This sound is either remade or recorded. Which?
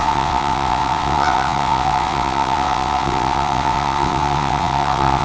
remade